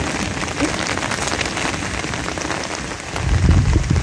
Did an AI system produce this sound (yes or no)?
no